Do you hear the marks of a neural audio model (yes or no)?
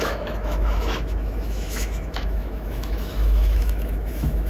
yes